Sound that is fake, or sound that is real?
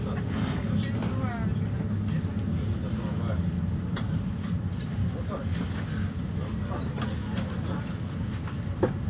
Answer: real